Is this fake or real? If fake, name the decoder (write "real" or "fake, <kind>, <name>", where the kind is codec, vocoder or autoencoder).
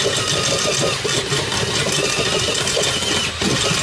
real